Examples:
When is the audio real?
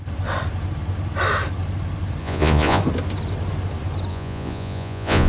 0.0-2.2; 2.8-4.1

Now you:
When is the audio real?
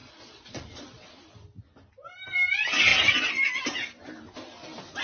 1.1-5.0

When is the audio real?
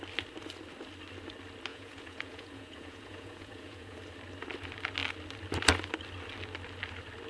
0.0-1.7; 4.0-7.3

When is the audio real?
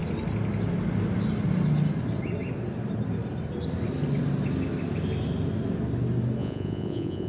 0.0-6.4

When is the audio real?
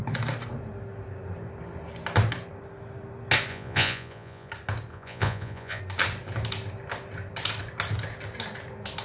0.0-3.5; 4.5-4.9; 5.8-9.0